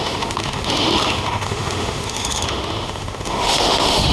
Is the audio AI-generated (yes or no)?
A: yes